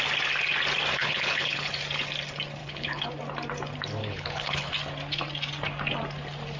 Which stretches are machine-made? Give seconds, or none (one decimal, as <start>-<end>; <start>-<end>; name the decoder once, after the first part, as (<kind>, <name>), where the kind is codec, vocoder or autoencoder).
1.0-1.7 (codec, HILCodec); 2.6-3.1; 4.0-4.7